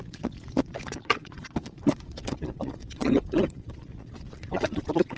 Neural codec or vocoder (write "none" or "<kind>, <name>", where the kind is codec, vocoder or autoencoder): vocoder, Vocos